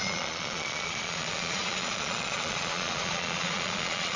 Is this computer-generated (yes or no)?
yes